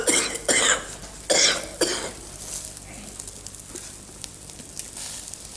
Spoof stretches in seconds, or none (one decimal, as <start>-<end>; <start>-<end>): none